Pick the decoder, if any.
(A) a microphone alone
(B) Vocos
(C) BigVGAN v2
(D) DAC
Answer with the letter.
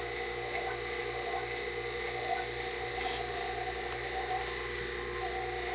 A